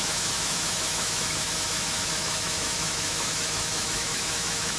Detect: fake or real fake